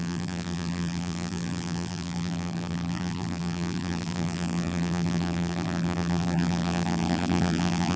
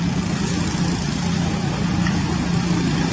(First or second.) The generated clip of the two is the first